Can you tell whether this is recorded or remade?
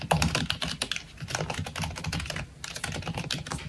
recorded